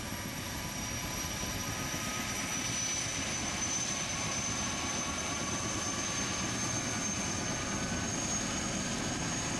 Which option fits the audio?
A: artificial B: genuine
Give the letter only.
B